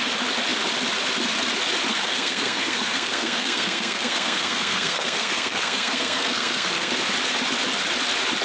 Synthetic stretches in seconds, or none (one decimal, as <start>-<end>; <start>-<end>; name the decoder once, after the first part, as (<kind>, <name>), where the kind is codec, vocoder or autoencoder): 1.9-6.9 (codec, SNAC)